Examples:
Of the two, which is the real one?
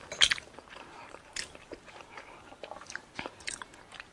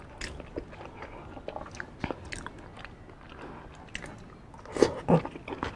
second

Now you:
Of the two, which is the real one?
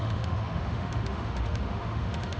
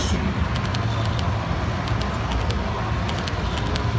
second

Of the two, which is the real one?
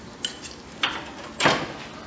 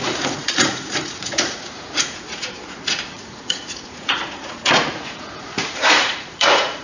first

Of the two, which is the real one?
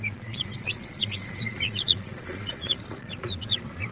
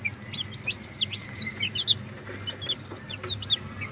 second